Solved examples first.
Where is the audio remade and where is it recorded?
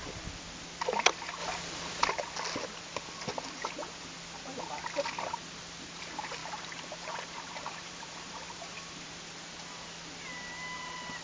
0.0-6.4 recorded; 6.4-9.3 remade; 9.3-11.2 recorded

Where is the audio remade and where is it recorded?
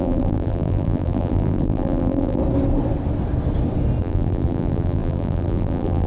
0.0-2.4 remade; 2.4-4.0 recorded; 4.0-6.1 remade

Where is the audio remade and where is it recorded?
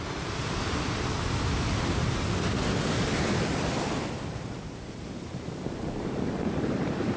0.0-7.2 remade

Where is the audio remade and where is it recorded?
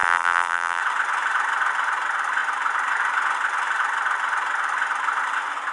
0.0-0.8 remade; 0.8-5.7 recorded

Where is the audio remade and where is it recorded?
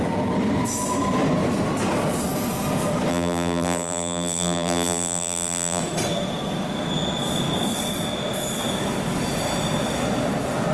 0.0-3.1 recorded; 3.1-5.8 remade; 5.8-10.7 recorded